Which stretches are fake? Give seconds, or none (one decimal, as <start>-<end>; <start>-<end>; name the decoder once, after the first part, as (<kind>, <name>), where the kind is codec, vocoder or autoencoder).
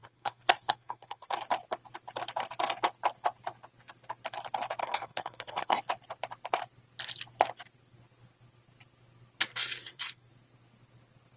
0.0-1.3 (codec, SNAC); 4.8-5.8; 9.5-10.3